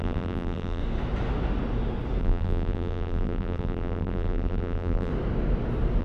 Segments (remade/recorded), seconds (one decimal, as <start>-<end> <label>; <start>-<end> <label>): 0.0-0.8 remade; 0.8-2.2 recorded; 2.2-5.1 remade; 5.1-6.0 recorded